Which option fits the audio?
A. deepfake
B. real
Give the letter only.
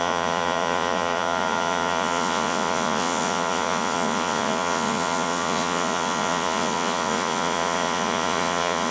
A